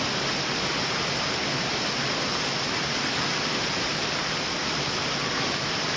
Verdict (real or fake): real